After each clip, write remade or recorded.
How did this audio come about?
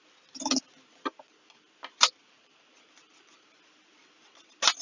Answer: recorded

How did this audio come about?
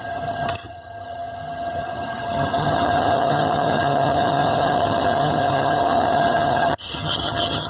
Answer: remade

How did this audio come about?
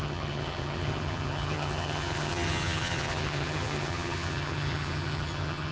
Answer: remade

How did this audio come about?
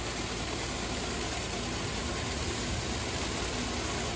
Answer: recorded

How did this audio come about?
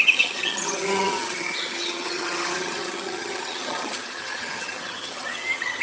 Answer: remade